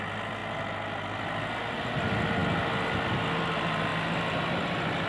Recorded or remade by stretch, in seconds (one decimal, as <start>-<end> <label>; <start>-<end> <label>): 0.0-5.1 recorded